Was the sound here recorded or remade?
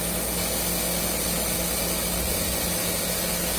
recorded